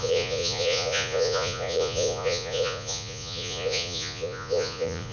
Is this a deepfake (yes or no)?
yes